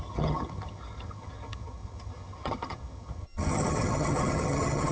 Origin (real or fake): fake